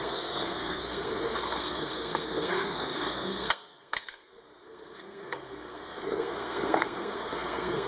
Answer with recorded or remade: remade